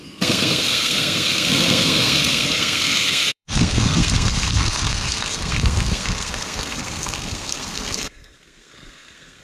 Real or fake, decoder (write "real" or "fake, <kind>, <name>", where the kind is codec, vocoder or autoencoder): fake, codec, SNAC